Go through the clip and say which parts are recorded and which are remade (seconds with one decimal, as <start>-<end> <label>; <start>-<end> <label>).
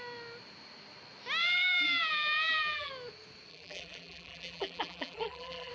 0.0-1.4 recorded; 1.4-2.9 remade; 2.9-3.5 recorded; 3.5-5.7 remade